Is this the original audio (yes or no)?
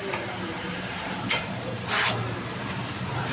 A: no